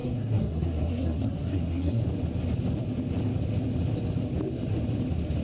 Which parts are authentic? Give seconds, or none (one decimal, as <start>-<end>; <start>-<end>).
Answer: 2.0-5.4